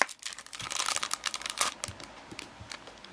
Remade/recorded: recorded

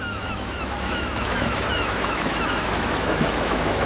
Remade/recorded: remade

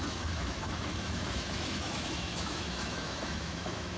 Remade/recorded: remade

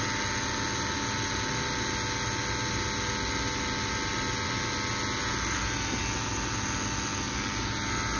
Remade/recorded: recorded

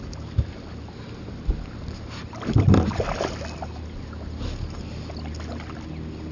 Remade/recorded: recorded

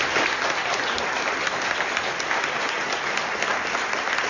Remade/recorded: recorded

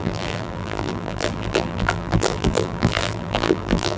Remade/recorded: remade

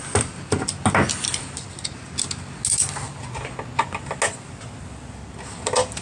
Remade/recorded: recorded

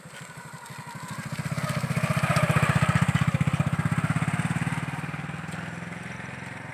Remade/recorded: recorded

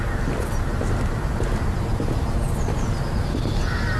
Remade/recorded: recorded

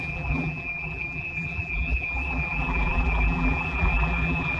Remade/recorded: remade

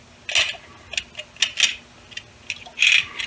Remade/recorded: recorded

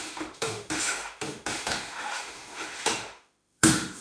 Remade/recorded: remade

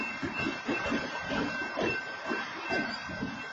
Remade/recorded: remade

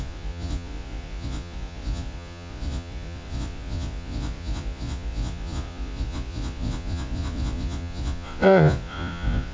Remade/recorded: remade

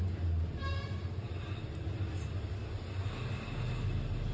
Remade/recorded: recorded